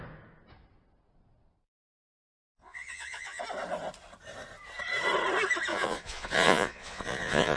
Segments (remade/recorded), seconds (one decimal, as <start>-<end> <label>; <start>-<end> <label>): 0.0-2.6 recorded; 2.6-3.4 remade; 3.4-5.7 recorded; 5.7-7.6 remade